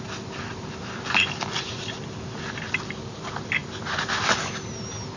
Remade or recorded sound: recorded